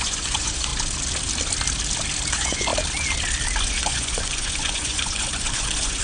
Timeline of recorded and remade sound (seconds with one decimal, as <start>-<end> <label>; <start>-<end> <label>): 0.0-0.7 remade; 0.7-2.3 recorded; 2.3-2.7 remade; 2.7-3.6 recorded; 3.6-6.0 remade